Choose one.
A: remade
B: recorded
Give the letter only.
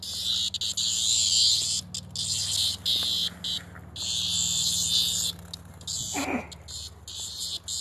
B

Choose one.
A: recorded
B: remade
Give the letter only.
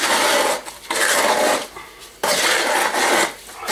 A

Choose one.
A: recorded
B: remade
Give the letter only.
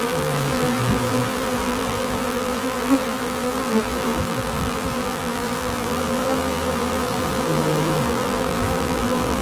B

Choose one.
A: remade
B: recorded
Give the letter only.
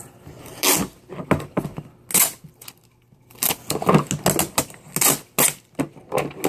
B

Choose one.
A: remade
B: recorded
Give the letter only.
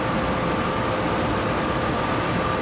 B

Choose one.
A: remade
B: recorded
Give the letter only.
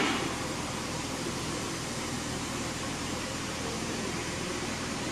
A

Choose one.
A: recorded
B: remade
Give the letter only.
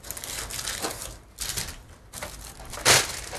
A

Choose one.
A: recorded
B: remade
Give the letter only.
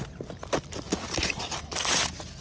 B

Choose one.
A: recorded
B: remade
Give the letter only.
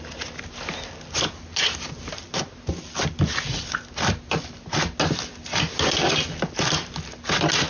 A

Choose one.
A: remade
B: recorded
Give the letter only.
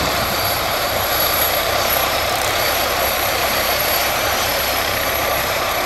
A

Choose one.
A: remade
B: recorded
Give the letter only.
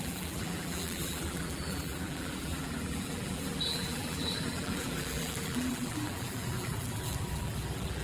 A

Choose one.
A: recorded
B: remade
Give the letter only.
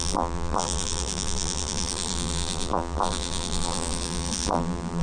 B